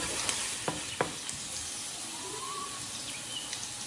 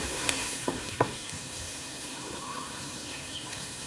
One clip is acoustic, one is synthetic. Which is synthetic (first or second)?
second